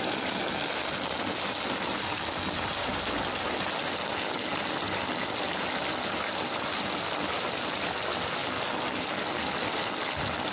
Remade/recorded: recorded